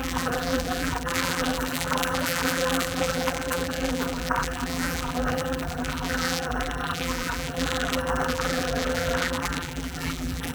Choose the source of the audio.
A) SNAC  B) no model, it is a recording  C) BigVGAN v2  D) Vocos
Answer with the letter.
C